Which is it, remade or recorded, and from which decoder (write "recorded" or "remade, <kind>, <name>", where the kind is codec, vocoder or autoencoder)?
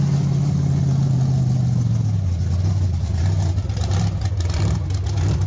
recorded